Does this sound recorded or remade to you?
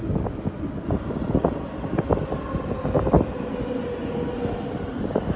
recorded